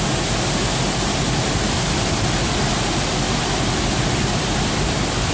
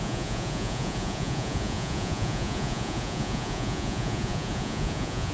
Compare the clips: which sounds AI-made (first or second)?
second